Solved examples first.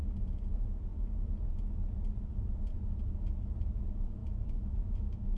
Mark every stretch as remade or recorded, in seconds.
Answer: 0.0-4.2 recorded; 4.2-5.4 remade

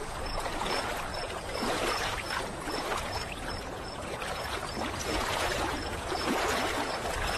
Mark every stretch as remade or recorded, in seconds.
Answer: 0.0-7.4 remade

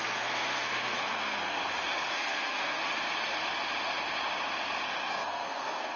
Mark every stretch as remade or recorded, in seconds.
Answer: 0.0-1.6 remade; 1.6-2.1 recorded; 2.1-2.8 remade; 2.8-5.1 recorded; 5.1-6.0 remade

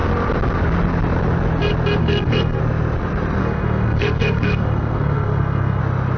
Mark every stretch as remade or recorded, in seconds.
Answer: 0.0-2.0 recorded; 2.0-2.6 remade; 2.6-3.4 recorded; 3.4-5.8 remade; 5.8-6.2 recorded

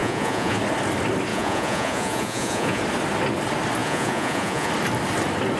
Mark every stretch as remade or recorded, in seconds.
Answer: 0.0-0.6 remade; 0.6-1.3 recorded; 1.3-2.8 remade; 2.8-3.8 recorded; 3.8-4.7 remade; 4.7-5.6 recorded